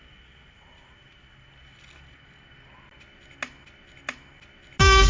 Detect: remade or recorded recorded